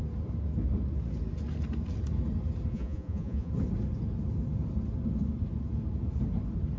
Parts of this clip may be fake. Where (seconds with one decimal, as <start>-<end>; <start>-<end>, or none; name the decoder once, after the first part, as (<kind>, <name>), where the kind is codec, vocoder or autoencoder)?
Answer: 2.7-3.5 (vocoder, Vocos)